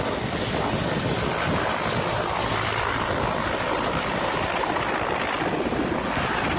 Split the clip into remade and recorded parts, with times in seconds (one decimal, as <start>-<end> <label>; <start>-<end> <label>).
0.0-6.6 recorded